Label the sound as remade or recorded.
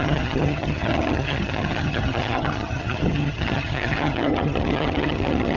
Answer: remade